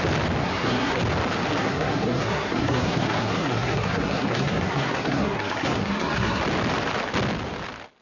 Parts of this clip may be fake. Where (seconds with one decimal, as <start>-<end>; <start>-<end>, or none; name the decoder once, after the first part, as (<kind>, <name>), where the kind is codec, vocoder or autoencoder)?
0.4-1.0 (codec, SNAC); 1.6-6.4